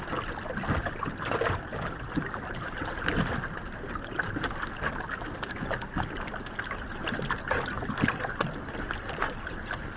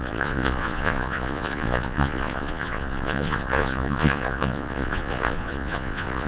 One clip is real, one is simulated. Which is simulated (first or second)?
second